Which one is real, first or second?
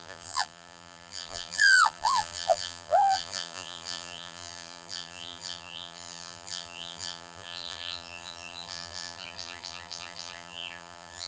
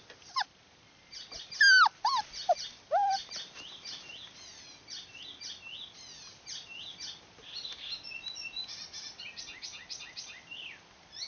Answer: second